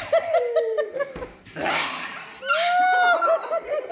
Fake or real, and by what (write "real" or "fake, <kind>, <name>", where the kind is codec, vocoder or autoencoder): real